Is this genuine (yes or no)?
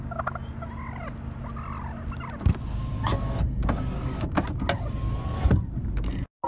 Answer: yes